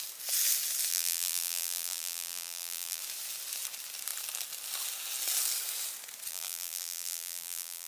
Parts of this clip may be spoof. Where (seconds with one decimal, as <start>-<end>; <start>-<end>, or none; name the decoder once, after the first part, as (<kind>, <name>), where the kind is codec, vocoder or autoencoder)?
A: 0.9-3.0 (vocoder, BigVGAN v2); 6.3-7.9